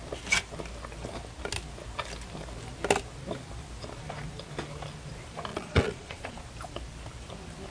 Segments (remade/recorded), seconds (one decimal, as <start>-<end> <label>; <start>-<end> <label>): 0.0-5.5 recorded; 5.5-6.4 remade; 6.4-7.7 recorded